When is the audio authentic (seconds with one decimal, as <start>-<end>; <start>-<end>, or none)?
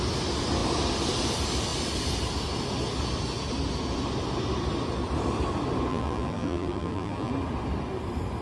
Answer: 0.0-5.9; 7.3-8.4